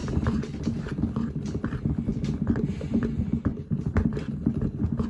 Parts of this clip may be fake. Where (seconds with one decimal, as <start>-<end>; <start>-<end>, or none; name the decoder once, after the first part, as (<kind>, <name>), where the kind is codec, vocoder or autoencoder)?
3.5-4.1 (vocoder, BigVGAN v2)